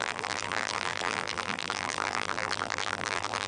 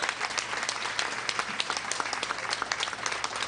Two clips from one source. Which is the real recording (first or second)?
second